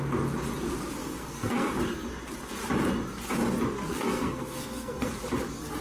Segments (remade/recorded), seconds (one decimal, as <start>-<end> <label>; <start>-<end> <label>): 0.0-1.0 recorded; 1.0-1.7 remade; 1.7-3.9 recorded; 3.9-5.1 remade; 5.1-5.8 recorded